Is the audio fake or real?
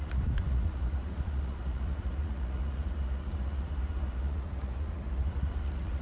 fake